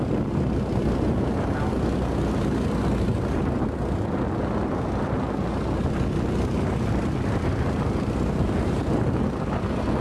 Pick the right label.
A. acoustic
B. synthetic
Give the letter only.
A